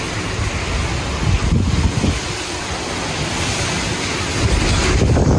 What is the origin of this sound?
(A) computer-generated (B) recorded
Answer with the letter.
B